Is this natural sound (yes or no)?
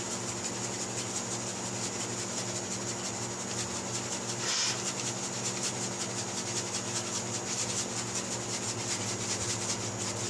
yes